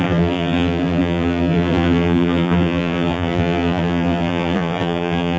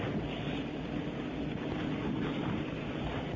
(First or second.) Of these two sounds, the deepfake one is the first